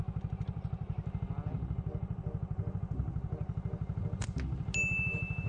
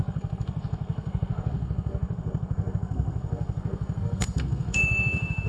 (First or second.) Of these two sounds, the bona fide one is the first